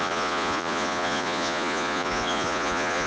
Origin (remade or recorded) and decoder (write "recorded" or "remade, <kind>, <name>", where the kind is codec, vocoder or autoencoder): remade, vocoder, Vocos